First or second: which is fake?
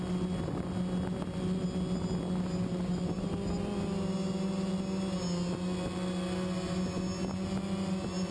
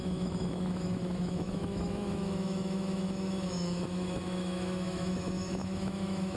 second